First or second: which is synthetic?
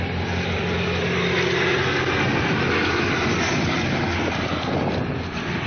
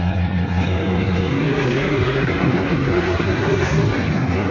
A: second